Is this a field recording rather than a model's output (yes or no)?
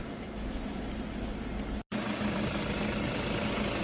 yes